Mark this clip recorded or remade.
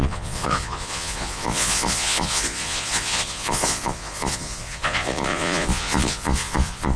remade